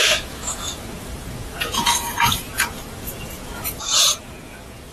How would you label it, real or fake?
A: fake